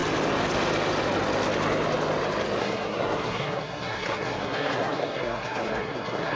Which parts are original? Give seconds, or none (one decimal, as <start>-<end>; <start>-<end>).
0.0-2.6